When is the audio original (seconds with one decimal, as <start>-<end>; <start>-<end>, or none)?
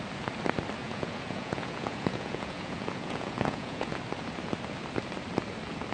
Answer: 0.0-0.8; 4.0-5.9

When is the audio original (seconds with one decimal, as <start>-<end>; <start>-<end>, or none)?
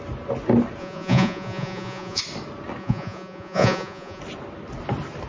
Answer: 0.0-0.8; 2.2-2.8; 4.2-5.3